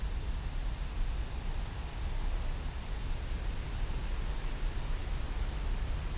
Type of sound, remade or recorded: recorded